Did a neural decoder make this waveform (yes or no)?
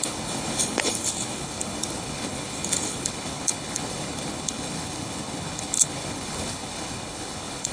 yes